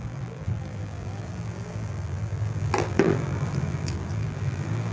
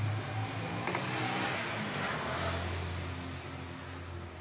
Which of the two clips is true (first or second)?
second